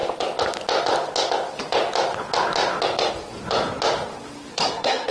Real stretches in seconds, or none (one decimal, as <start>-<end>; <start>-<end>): 0.0-4.5

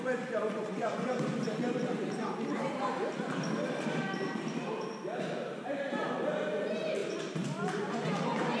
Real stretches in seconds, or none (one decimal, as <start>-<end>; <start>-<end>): 0.0-0.4; 3.1-7.0

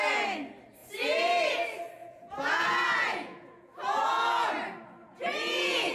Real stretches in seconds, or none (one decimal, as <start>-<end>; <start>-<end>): 0.0-0.8; 1.4-2.0; 4.5-5.0